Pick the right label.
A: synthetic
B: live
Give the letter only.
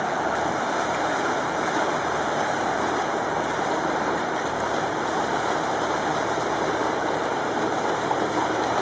A